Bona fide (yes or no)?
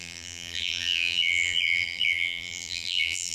no